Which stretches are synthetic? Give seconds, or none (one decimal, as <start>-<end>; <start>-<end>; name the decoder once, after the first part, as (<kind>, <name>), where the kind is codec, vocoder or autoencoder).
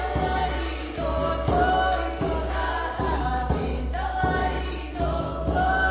0.4-3.8 (codec, DAC); 4.4-5.9